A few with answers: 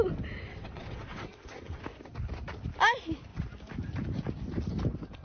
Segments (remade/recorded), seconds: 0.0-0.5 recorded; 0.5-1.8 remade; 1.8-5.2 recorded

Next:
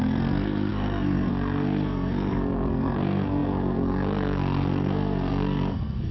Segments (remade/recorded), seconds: 0.0-6.1 remade

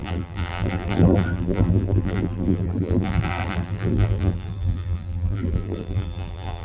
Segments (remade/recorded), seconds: 0.0-6.6 remade

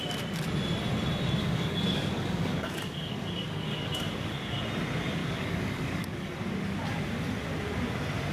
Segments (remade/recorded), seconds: 0.0-1.4 recorded; 1.4-4.3 remade; 4.3-5.2 recorded; 5.2-6.4 remade; 6.4-8.3 recorded